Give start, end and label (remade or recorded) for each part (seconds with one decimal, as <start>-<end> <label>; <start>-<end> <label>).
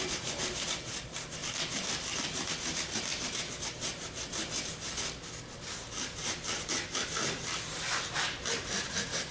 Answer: 0.0-9.3 recorded